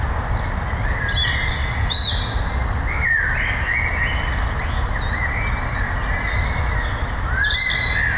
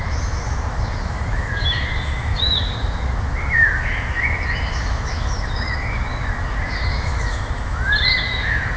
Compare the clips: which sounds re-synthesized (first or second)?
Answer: second